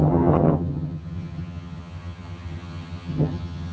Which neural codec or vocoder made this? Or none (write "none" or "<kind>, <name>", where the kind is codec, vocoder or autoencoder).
vocoder, HiFi-GAN